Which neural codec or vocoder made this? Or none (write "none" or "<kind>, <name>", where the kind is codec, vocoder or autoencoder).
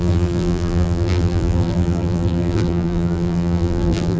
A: vocoder, BigVGAN v2